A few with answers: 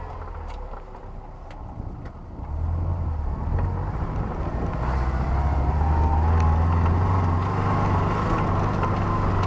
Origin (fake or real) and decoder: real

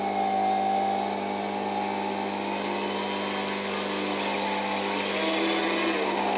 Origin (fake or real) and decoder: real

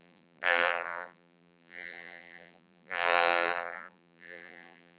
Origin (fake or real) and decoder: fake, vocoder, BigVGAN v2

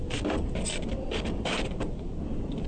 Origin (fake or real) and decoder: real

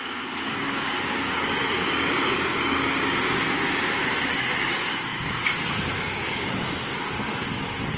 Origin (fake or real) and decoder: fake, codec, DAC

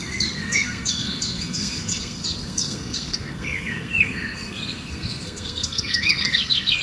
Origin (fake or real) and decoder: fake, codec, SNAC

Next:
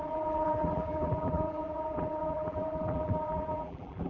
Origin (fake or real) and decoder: fake, vocoder, BigVGAN v2